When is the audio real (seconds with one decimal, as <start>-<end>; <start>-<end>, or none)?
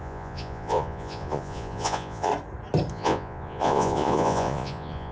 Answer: 2.3-2.9